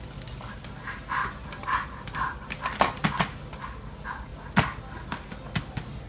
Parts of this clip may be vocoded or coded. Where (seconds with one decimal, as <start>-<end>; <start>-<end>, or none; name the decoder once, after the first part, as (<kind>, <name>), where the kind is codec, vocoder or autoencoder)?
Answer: none